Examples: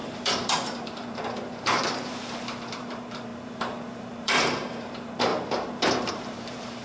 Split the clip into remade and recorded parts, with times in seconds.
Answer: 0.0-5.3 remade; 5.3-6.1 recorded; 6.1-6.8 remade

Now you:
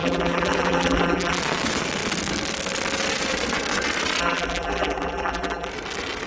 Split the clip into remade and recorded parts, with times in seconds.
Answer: 0.0-1.4 remade; 1.4-4.2 recorded; 4.2-5.7 remade; 5.7-6.3 recorded